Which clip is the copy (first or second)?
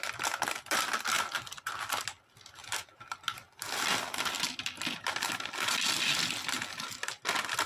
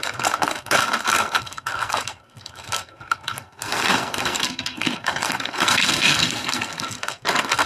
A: second